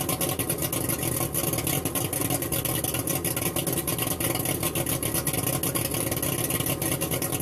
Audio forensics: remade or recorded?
recorded